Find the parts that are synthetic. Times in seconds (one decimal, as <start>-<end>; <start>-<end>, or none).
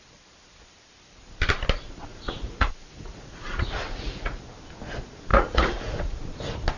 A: 2.1-4.4; 5.3-6.2